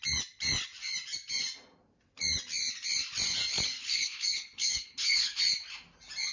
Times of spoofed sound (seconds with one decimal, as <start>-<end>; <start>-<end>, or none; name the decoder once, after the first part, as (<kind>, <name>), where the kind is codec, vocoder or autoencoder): 3.8-5.4 (codec, HILCodec)